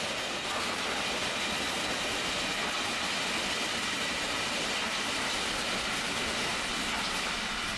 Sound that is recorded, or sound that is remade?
recorded